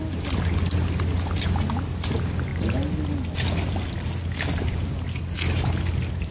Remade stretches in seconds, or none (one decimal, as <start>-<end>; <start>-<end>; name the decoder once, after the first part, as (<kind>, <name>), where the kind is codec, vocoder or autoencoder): none